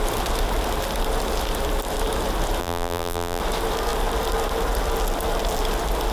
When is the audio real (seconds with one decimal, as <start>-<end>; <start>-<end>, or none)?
0.0-2.6; 3.4-6.1